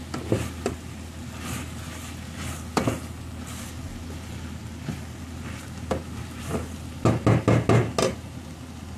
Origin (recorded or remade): recorded